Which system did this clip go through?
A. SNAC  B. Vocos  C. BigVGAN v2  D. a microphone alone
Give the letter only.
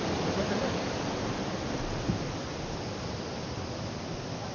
D